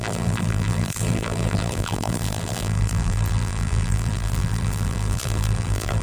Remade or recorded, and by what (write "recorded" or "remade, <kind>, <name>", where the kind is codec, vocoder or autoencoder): remade, vocoder, BigVGAN v2